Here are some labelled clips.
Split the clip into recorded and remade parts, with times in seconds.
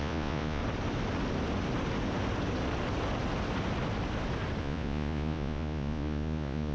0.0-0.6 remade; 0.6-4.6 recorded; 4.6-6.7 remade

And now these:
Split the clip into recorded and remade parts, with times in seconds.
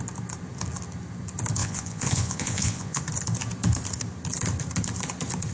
0.0-1.6 recorded; 1.6-3.0 remade; 3.0-5.5 recorded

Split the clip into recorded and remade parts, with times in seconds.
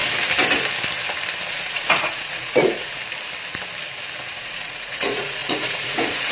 0.0-1.5 recorded; 1.5-3.0 remade; 3.0-4.4 recorded; 4.4-6.3 remade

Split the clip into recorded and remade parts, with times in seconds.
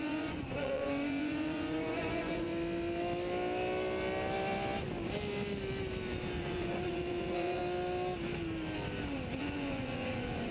0.0-2.5 remade; 2.5-6.4 recorded; 6.4-7.6 remade; 7.6-9.4 recorded; 9.4-10.5 remade